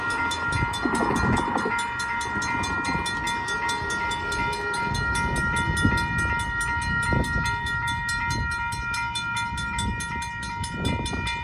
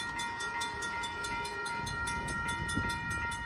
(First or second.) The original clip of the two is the first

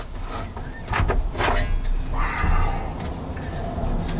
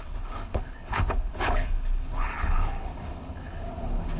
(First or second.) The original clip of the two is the first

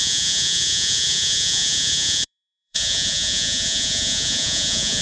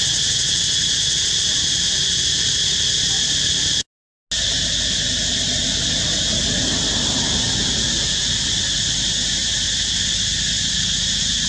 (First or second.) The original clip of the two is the second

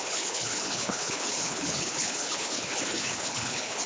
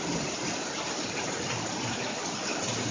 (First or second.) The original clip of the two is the second